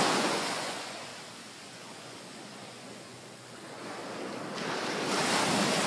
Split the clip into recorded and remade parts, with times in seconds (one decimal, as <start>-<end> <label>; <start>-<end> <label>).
0.0-1.1 remade; 1.1-1.6 recorded; 1.6-4.0 remade; 4.0-5.9 recorded